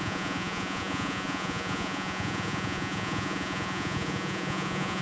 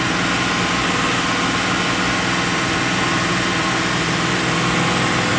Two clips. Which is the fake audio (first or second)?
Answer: first